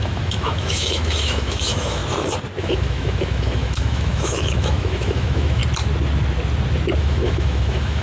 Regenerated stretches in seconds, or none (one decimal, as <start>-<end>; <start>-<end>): 0.0-2.0; 2.6-5.6; 7.0-8.0